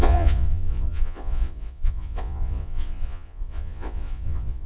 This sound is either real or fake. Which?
fake